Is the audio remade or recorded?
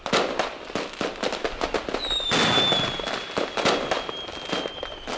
recorded